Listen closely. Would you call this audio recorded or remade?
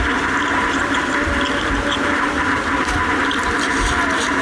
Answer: remade